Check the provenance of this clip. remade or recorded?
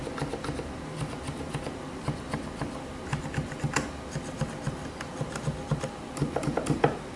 recorded